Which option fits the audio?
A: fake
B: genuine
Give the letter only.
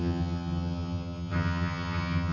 A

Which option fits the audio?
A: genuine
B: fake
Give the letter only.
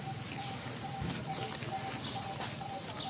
A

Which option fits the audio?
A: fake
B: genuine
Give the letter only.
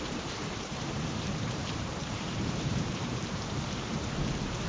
A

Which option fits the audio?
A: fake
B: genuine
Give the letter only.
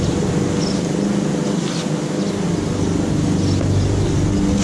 B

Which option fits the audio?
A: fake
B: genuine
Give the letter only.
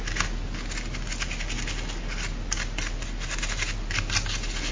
B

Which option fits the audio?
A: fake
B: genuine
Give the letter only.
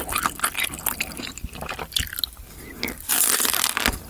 B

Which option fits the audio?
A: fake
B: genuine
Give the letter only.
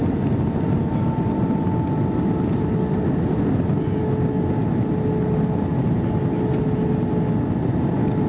B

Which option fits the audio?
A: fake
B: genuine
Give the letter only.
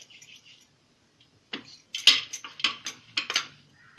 B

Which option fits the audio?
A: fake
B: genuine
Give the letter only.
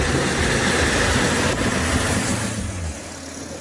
B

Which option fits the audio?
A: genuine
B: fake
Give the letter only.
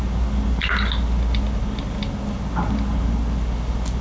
A